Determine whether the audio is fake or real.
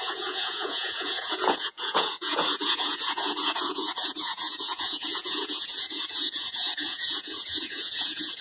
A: fake